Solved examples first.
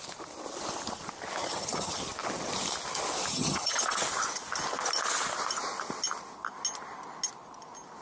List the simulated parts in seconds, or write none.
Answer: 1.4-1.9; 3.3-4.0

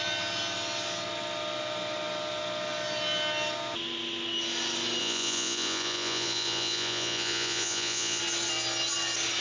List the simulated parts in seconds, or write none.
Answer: 5.0-8.2

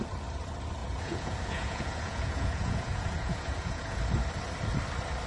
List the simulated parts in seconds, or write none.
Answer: 0.8-4.0